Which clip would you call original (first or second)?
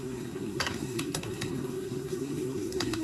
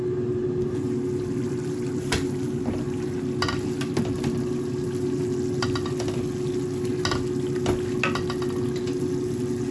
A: second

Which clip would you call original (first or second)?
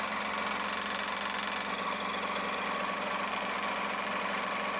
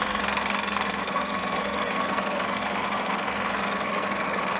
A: first